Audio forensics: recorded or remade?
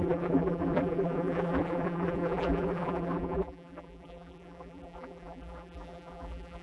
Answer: remade